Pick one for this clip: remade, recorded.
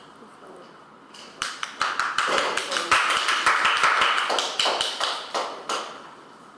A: remade